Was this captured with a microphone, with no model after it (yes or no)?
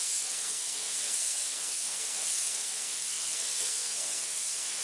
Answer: no